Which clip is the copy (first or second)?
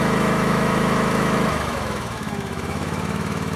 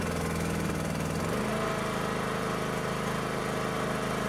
first